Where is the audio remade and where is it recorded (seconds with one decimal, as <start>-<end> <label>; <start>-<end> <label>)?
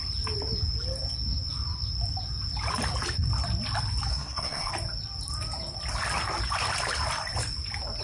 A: 0.0-4.1 recorded; 4.1-4.7 remade; 4.7-8.0 recorded